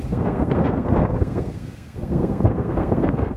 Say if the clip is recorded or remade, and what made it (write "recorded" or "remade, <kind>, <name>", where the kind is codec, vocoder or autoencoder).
remade, codec, SNAC